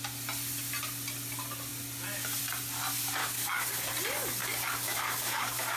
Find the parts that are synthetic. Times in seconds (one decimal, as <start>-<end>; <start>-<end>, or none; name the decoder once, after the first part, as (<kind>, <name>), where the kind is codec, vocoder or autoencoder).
3.2-3.9 (codec, DAC); 4.4-5.8